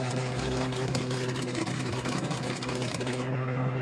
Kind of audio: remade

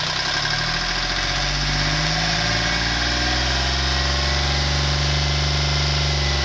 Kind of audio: recorded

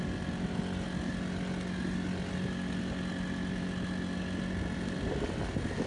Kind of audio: recorded